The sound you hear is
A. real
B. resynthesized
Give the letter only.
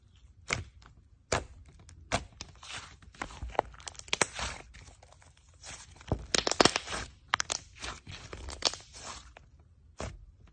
A